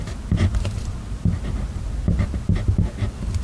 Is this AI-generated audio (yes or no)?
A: no